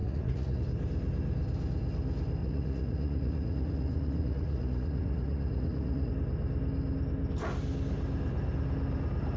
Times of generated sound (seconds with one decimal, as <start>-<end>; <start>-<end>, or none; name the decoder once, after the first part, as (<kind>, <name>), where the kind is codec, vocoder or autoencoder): 0.0-0.6 (vocoder, Vocos); 2.4-6.1